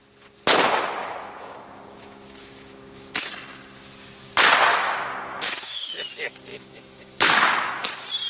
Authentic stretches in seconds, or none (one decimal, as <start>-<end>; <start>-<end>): 0.0-1.0; 3.3-4.7; 5.9-6.5; 7.9-8.3